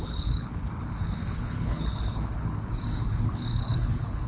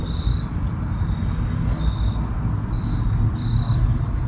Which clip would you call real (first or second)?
second